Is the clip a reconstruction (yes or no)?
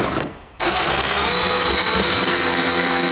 yes